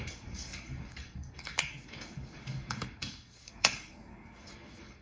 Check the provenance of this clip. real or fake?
fake